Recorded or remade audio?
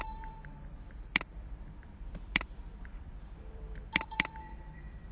remade